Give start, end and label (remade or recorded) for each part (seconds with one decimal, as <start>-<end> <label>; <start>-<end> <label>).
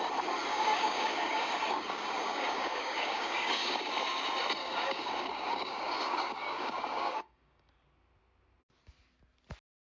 0.0-0.5 recorded; 0.5-3.9 remade; 3.9-4.6 recorded; 4.6-7.7 remade; 7.7-9.9 recorded